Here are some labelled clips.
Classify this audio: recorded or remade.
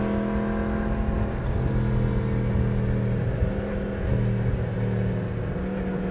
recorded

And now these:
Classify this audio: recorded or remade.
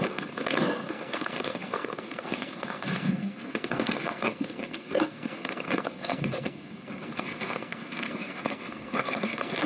remade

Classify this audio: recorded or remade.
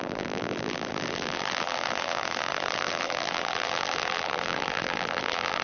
remade